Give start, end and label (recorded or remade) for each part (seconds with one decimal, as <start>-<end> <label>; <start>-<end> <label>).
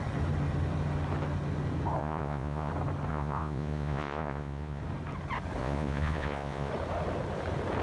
0.0-2.0 recorded; 2.0-2.7 remade; 2.7-3.1 recorded; 3.1-4.8 remade; 4.8-5.6 recorded; 5.6-6.7 remade; 6.7-7.8 recorded